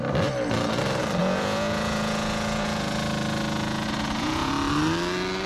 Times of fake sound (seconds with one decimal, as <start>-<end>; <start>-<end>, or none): 1.2-4.5